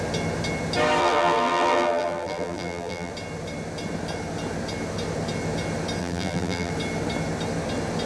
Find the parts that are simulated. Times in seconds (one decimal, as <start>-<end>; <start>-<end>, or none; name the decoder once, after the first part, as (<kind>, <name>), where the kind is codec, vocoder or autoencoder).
1.0-3.1 (vocoder, BigVGAN v2); 6.0-6.7